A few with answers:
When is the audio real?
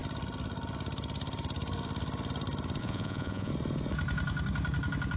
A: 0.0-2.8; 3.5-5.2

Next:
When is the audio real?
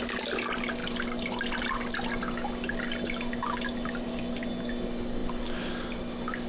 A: 0.0-6.5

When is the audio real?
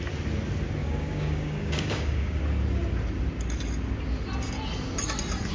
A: 0.0-0.8; 2.4-5.5